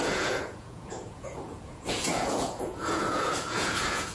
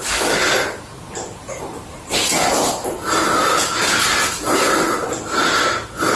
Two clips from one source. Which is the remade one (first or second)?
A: first